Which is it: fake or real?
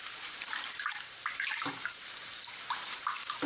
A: fake